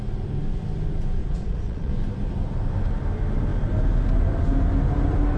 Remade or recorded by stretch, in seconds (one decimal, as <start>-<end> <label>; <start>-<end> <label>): 0.0-1.2 recorded; 1.2-1.9 remade; 1.9-5.4 recorded

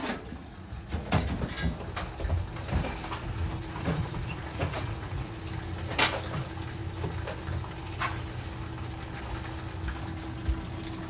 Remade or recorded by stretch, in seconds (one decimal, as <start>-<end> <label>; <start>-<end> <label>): 0.0-1.2 remade; 1.2-3.6 recorded; 3.6-5.4 remade; 5.4-11.1 recorded

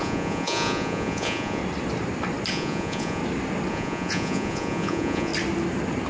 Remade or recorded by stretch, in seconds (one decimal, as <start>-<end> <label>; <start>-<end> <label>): 0.0-1.6 remade; 1.6-2.5 recorded; 2.5-3.2 remade; 3.2-3.7 recorded; 3.7-5.3 remade; 5.3-6.1 recorded

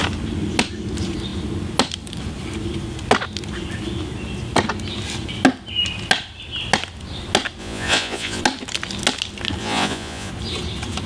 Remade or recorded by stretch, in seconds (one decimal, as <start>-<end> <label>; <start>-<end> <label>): 0.0-7.6 recorded; 7.6-8.4 remade; 8.4-9.6 recorded; 9.6-10.3 remade; 10.3-11.1 recorded

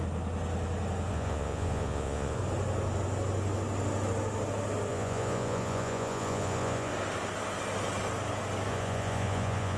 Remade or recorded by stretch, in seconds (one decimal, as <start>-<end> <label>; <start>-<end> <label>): 0.0-1.1 recorded; 1.1-2.4 remade; 2.4-4.9 recorded; 4.9-6.9 remade; 6.9-8.7 recorded; 8.7-9.8 remade

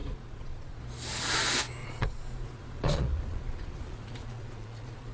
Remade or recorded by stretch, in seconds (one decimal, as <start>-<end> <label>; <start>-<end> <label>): 0.0-0.8 remade; 0.8-1.8 recorded; 1.8-5.1 remade

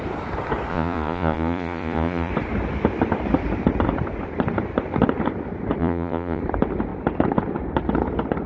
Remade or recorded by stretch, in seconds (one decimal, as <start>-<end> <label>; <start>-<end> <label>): 0.0-0.7 recorded; 0.7-2.3 remade; 2.3-5.8 recorded; 5.8-6.4 remade; 6.4-8.5 recorded